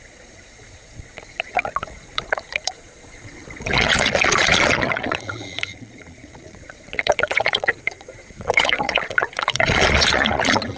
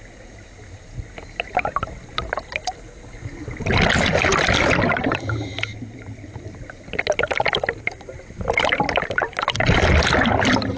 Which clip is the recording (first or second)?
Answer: second